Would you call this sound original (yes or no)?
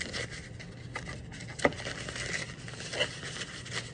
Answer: yes